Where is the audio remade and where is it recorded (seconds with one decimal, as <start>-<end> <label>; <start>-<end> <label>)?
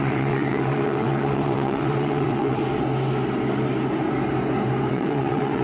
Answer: 0.0-2.6 remade; 2.6-4.9 recorded; 4.9-5.6 remade